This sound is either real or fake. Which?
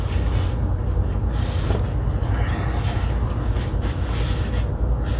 real